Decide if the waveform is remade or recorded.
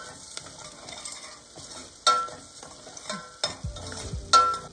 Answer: recorded